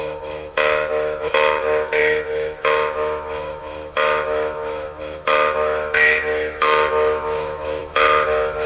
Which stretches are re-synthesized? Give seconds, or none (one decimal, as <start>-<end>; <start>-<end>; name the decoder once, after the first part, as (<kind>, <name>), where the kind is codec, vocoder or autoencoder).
0.0-8.7 (autoencoder, DAC-VAE)

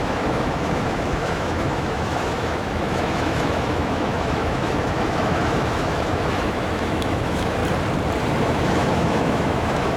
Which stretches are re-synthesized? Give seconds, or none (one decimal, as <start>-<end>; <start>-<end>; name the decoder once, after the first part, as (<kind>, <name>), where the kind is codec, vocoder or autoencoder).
0.0-7.6 (autoencoder, DAC-VAE); 8.4-10.0

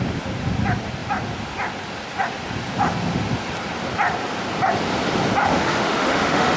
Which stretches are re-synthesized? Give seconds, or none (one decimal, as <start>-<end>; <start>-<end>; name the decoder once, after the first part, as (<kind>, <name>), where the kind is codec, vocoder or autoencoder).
5.5-6.6 (autoencoder, DAC-VAE)

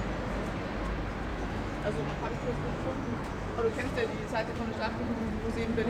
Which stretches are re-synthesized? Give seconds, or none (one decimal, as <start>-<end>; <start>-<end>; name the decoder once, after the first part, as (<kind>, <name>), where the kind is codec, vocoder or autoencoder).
1.3-2.2 (autoencoder, DAC-VAE); 2.6-3.9